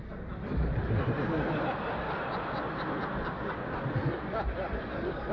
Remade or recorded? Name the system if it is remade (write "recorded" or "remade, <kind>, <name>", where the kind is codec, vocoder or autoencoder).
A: recorded